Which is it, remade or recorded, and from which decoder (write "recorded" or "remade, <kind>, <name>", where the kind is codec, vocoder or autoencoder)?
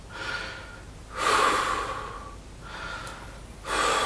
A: recorded